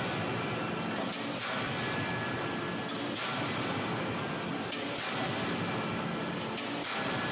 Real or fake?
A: real